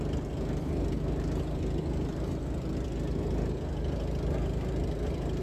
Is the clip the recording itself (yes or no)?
yes